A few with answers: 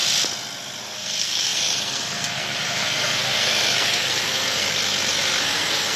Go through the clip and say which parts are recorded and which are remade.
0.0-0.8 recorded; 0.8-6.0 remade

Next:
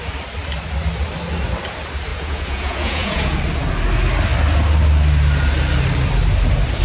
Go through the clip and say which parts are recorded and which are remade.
0.0-2.1 recorded; 2.1-3.4 remade; 3.4-6.8 recorded

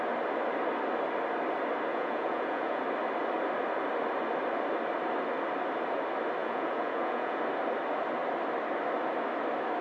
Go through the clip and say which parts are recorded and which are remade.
0.0-1.9 recorded; 1.9-2.8 remade; 2.8-6.4 recorded; 6.4-7.4 remade; 7.4-9.8 recorded

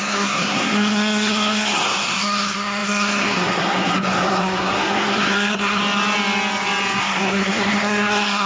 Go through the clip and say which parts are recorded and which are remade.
0.0-5.8 remade; 5.8-7.0 recorded; 7.0-8.5 remade

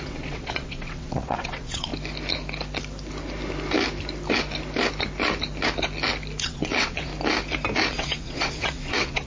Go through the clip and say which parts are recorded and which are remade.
0.0-1.9 remade; 1.9-6.4 recorded; 6.4-7.1 remade; 7.1-7.9 recorded; 7.9-9.3 remade